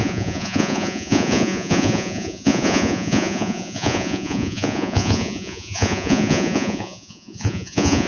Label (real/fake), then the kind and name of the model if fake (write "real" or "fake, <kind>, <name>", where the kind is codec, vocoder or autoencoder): fake, vocoder, Vocos